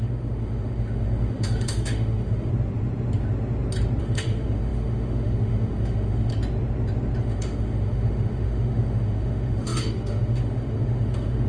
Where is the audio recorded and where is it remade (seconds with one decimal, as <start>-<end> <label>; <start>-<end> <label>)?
0.0-2.5 remade; 2.5-4.0 recorded; 4.0-6.3 remade; 6.3-7.2 recorded; 7.2-11.5 remade